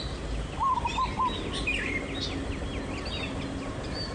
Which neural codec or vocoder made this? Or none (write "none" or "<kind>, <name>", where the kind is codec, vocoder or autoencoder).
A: none